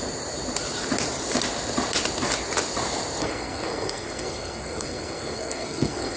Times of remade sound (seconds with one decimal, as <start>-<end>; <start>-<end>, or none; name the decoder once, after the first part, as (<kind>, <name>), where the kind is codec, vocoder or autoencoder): 3.2-6.2 (codec, SNAC)